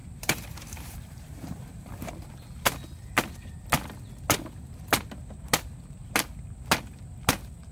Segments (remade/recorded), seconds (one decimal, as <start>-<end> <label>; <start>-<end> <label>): 0.0-2.1 remade; 2.1-7.7 recorded